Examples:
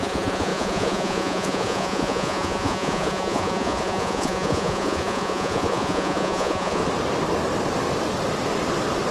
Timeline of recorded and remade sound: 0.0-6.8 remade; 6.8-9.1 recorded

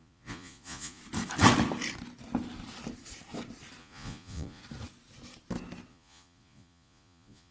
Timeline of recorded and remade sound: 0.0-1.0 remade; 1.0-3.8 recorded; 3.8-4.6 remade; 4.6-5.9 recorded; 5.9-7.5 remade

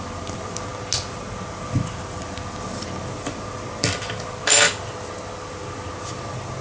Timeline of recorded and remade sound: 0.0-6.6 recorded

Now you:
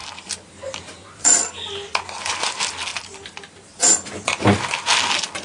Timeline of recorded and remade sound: 0.0-5.4 recorded

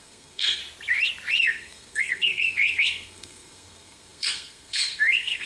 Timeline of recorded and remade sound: 0.0-0.6 remade; 0.6-1.4 recorded; 1.4-5.5 remade

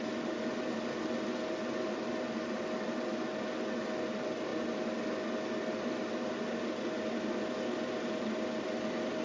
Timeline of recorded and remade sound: 0.0-9.2 recorded